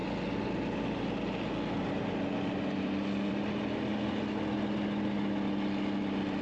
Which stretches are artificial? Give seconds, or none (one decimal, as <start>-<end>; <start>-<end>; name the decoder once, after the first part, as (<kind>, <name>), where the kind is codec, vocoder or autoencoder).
none